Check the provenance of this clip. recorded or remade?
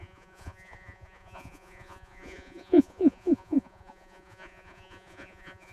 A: remade